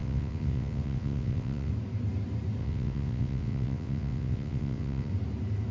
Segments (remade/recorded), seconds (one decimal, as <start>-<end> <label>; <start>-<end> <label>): 0.0-1.7 remade; 1.7-2.6 recorded; 2.6-5.1 remade; 5.1-5.7 recorded